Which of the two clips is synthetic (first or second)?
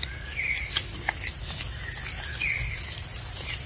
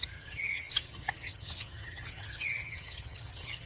second